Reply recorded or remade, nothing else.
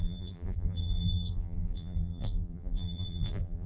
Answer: remade